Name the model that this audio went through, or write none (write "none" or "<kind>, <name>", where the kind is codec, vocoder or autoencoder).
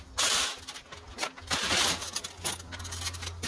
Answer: none